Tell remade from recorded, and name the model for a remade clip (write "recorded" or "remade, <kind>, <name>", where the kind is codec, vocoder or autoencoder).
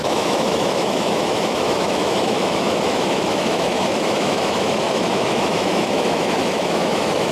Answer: remade, autoencoder, DAC-VAE